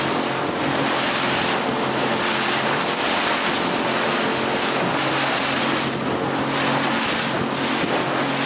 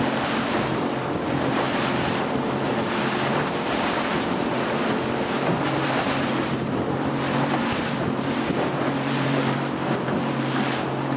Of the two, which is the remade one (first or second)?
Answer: second